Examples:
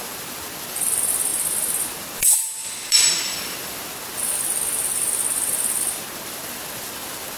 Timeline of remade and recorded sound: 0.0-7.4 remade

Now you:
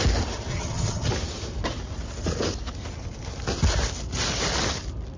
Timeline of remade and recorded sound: 0.0-0.5 recorded; 0.5-1.1 remade; 1.1-5.2 recorded

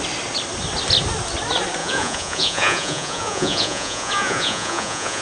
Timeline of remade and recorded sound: 0.0-1.8 recorded; 1.8-5.2 remade